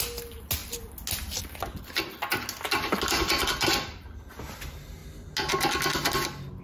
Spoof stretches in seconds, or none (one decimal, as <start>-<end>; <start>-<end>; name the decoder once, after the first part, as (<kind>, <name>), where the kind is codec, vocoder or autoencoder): none

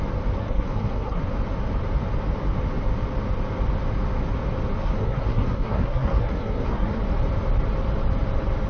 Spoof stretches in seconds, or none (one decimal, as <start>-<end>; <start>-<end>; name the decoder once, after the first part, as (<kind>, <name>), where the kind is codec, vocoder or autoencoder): 0.4-1.2 (codec, SNAC); 4.8-7.0

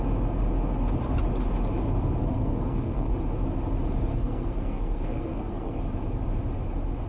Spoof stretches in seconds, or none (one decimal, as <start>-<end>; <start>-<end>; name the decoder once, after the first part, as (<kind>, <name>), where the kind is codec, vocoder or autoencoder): 2.2-3.1 (codec, SNAC); 4.1-5.8

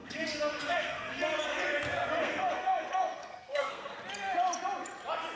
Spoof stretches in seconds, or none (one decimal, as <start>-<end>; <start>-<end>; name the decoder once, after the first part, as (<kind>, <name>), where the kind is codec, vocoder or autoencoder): 0.0-1.6 (codec, SNAC); 2.2-4.0

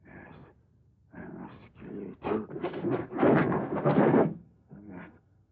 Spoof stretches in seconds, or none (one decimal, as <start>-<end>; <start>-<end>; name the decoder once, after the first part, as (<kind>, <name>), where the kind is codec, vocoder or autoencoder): 2.6-3.2 (codec, SNAC); 3.6-5.5